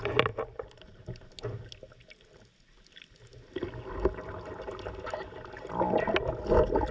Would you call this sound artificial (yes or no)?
no